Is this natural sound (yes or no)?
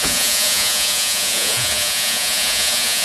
no